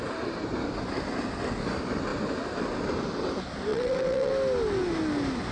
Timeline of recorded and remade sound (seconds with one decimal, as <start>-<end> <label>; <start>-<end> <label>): 0.0-3.7 recorded; 3.7-4.3 remade; 4.3-5.5 recorded